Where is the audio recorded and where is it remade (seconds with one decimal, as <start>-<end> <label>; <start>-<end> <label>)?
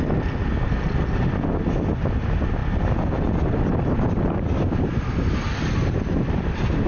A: 0.0-6.9 recorded